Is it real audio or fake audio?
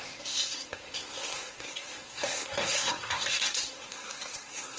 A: fake